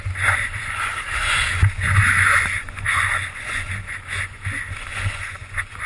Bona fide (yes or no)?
no